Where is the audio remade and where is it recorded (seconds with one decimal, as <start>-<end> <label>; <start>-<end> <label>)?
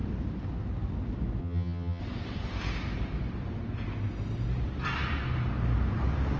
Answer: 0.0-1.4 recorded; 1.4-2.0 remade; 2.0-6.4 recorded